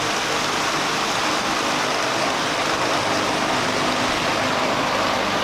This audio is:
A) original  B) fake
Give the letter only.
A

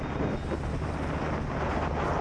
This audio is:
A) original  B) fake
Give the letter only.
A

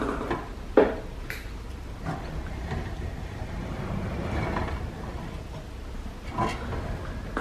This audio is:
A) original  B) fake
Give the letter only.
A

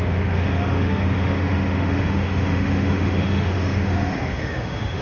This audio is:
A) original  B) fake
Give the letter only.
B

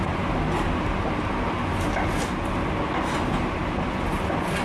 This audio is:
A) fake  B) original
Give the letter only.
B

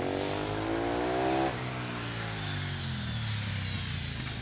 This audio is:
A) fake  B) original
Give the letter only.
B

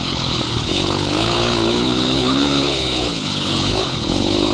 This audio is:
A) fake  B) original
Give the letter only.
A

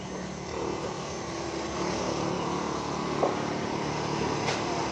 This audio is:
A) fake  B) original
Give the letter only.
B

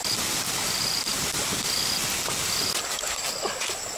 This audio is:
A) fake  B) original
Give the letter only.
B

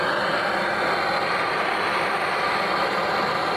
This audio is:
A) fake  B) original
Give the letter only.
B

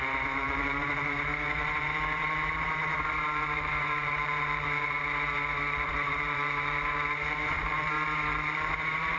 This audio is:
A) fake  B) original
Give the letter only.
A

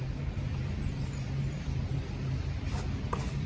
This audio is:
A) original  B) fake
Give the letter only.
B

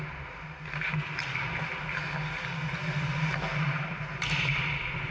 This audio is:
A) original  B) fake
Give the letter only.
A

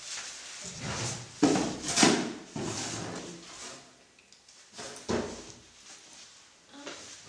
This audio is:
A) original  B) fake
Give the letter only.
A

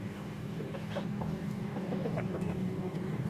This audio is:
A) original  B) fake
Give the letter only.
B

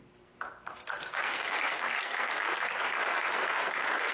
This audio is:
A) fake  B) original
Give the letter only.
A